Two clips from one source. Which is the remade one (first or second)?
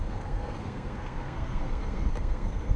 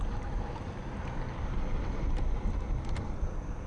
first